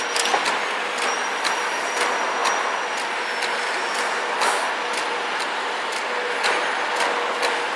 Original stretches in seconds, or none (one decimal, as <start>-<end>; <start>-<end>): 0.0-7.8